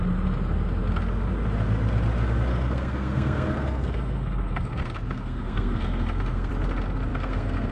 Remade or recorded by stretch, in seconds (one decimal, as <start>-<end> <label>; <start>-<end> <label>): 0.0-2.5 recorded; 2.5-6.5 remade; 6.5-7.1 recorded; 7.1-7.7 remade